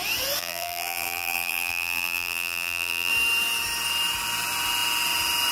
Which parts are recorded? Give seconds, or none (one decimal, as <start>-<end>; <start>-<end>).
0.0-0.4; 3.1-5.5